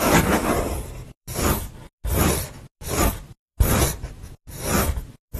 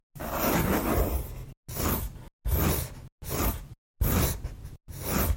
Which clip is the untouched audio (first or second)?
second